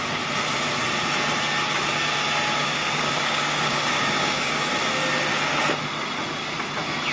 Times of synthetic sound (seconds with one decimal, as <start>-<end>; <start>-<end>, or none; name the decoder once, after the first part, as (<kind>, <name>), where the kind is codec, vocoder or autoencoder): 2.6-4.6 (codec, DAC)